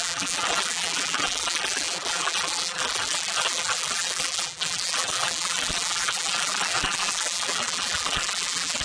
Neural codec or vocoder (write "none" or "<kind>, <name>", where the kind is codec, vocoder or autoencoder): vocoder, BigVGAN v2